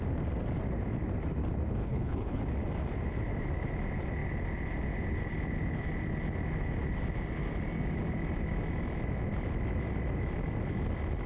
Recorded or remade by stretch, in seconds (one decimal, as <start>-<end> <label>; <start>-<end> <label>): 0.0-1.8 recorded; 1.8-2.4 remade; 2.4-11.3 recorded